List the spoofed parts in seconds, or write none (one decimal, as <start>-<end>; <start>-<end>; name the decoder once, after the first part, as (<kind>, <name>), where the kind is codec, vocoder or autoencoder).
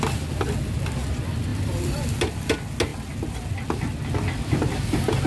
none